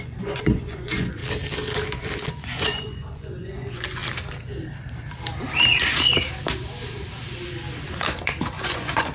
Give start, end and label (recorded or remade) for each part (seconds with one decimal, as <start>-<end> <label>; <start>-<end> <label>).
0.0-1.2 remade; 1.2-2.3 recorded; 2.3-4.0 remade; 4.0-7.9 recorded; 7.9-9.1 remade